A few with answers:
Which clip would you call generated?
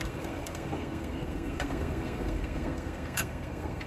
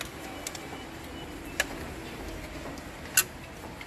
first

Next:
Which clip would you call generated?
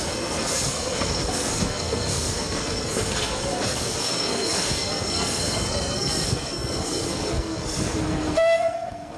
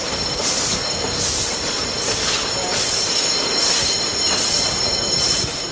first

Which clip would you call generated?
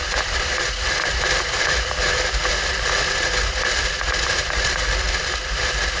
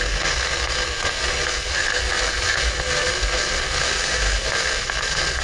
second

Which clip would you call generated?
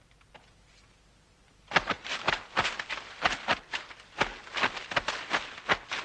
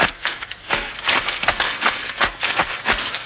second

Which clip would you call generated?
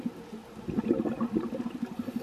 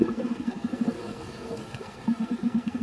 second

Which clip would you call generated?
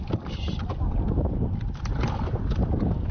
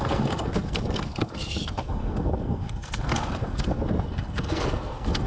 second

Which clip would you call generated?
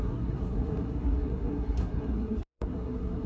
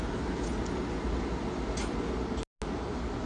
first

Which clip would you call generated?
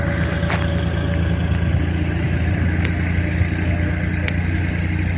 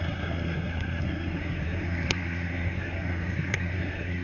second